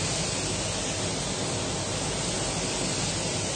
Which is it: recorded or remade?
recorded